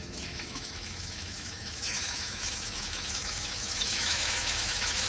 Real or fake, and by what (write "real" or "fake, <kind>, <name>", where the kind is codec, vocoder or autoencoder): fake, autoencoder, DAC-VAE